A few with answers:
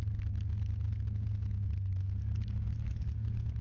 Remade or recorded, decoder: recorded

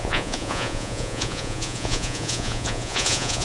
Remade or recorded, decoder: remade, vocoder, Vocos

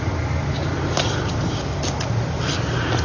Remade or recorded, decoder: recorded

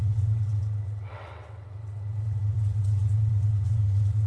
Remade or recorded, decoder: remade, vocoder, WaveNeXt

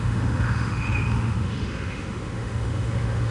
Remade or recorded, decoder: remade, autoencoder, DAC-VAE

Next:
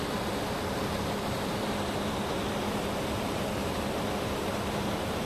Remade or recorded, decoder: remade, vocoder, BigVGAN v2